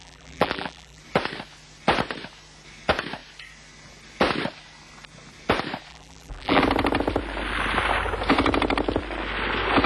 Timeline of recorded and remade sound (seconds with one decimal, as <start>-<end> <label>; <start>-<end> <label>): 0.0-1.0 remade; 1.0-5.9 recorded; 5.9-6.6 remade; 6.6-9.9 recorded